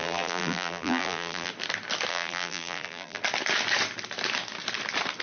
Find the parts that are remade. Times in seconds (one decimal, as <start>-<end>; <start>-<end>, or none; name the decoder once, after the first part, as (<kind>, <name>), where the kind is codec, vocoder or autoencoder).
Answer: 0.0-1.5 (vocoder, BigVGAN v2); 2.1-3.2